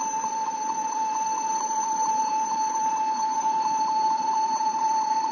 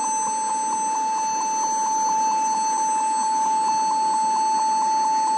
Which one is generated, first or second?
first